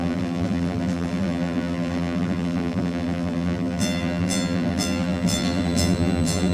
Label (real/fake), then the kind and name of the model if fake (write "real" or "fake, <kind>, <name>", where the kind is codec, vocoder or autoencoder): fake, vocoder, BigVGAN v2